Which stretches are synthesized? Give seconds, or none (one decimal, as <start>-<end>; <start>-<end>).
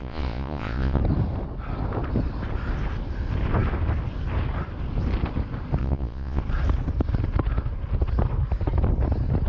0.0-1.0; 5.8-6.4